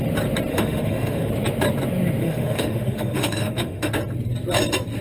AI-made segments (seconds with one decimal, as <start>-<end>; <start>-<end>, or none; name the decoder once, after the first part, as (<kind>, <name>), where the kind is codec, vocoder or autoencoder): 0.5-1.3 (autoencoder, DAC-VAE); 2.2-3.9